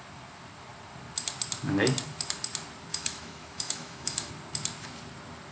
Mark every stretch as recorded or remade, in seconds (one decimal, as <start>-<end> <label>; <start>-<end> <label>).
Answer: 0.0-2.9 recorded; 2.9-4.3 remade; 4.3-5.5 recorded